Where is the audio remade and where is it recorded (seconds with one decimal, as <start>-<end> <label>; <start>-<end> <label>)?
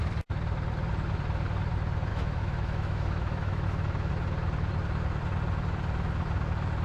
0.0-2.1 recorded; 2.1-4.1 remade; 4.1-6.8 recorded